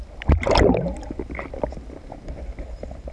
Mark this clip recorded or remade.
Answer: recorded